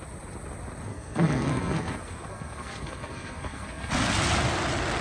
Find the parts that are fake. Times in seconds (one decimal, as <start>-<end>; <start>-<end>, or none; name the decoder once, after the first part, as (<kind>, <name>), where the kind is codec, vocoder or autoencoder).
0.9-3.9 (codec, SNAC)